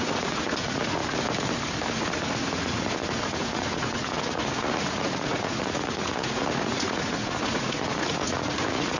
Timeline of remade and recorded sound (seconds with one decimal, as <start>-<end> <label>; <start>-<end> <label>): 0.0-1.0 remade; 1.0-1.9 recorded; 1.9-9.0 remade